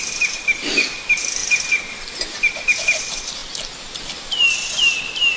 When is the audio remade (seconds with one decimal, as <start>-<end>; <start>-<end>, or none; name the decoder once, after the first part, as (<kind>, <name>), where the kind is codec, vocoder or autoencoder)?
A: none